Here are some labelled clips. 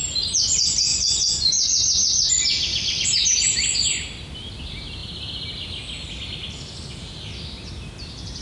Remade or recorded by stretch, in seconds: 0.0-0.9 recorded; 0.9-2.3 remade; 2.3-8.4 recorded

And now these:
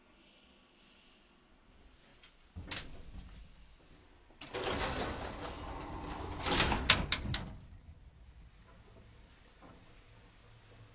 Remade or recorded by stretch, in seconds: 0.0-10.9 recorded